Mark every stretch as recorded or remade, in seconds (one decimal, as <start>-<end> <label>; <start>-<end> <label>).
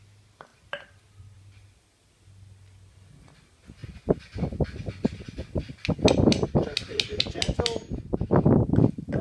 0.0-0.5 recorded; 0.5-1.4 remade; 1.4-9.2 recorded